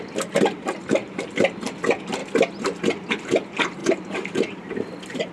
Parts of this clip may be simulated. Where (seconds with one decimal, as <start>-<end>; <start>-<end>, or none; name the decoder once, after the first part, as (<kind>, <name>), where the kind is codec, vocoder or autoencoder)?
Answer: 1.0-1.8 (vocoder, BigVGAN v2); 3.8-5.3